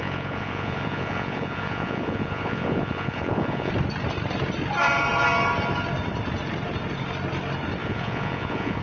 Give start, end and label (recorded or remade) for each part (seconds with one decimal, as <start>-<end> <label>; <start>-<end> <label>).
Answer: 0.0-3.7 remade; 3.7-7.8 recorded; 7.8-8.8 remade